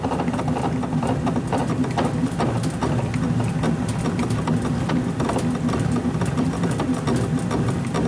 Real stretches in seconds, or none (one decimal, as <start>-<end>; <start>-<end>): 0.0-8.1